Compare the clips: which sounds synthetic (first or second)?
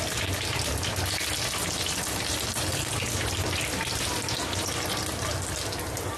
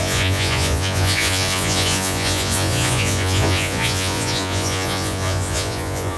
second